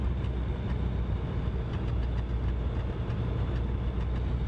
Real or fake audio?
real